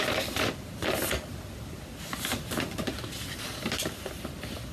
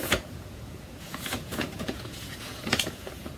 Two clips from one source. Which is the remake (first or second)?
second